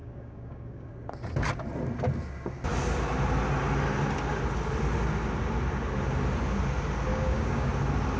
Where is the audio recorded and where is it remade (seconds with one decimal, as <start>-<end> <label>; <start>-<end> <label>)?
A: 0.0-0.9 remade; 0.9-7.1 recorded; 7.1-7.7 remade; 7.7-8.2 recorded